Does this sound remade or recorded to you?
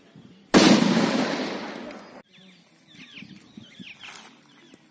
recorded